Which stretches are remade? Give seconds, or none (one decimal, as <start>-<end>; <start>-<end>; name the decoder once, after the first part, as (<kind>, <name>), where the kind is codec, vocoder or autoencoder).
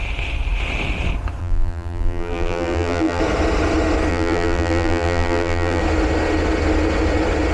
1.4-3.2 (vocoder, BigVGAN v2); 4.1-5.8